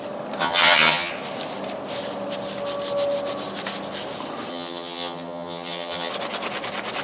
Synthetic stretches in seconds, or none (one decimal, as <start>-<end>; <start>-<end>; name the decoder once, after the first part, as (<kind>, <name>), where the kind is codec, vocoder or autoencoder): 0.4-1.1 (vocoder, HiFi-GAN); 4.5-6.1